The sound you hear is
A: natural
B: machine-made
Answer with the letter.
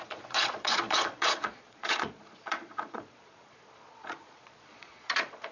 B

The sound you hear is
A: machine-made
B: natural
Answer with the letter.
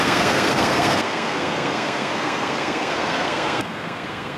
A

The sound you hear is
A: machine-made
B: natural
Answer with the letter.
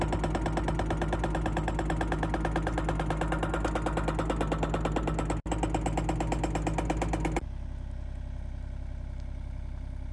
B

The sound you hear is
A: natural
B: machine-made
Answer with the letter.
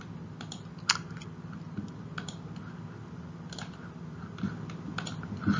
A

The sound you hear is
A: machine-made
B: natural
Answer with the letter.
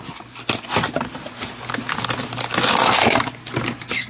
B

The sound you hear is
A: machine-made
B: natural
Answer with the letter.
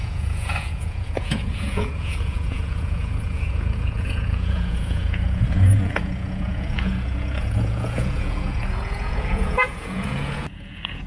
A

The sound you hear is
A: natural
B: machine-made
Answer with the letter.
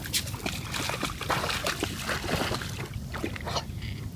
A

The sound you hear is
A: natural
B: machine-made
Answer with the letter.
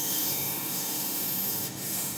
B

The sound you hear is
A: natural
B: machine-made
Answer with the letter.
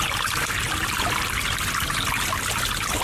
A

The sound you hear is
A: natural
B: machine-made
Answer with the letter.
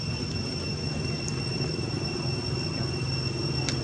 A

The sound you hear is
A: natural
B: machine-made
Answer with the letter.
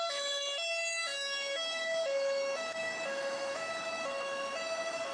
B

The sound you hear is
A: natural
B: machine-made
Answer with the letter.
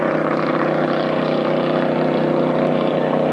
B